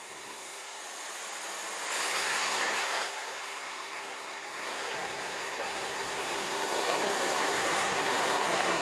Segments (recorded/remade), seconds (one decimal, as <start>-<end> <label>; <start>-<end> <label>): 0.0-0.8 remade; 0.8-2.1 recorded; 2.1-8.8 remade